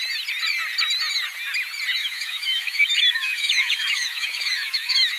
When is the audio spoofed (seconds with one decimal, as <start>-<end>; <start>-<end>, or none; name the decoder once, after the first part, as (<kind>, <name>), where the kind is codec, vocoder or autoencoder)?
2.0-5.2 (autoencoder, DAC-VAE)